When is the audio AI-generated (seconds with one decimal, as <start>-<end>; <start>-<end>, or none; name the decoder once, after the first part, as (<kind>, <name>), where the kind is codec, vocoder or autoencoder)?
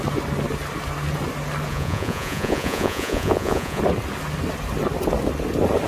1.7-3.8 (vocoder, Vocos)